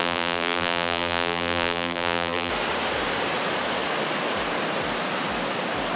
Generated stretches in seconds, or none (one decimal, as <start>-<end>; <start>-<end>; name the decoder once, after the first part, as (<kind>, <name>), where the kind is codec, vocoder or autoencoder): 0.0-2.5 (vocoder, BigVGAN v2)